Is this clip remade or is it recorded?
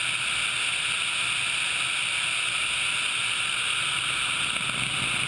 recorded